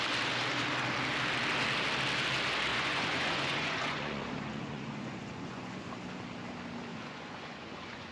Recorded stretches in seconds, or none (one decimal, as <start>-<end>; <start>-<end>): 0.0-2.7; 5.9-6.9